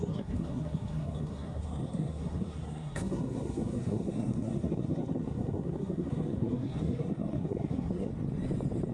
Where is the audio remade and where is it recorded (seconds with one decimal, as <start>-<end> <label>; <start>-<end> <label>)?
0.0-8.1 remade; 8.1-8.9 recorded